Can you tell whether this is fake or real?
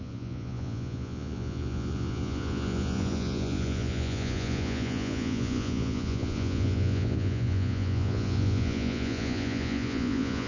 fake